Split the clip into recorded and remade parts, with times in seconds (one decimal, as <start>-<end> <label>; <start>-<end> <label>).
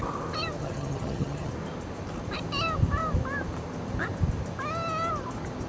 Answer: 0.0-0.6 recorded; 0.6-1.5 remade; 1.5-5.7 recorded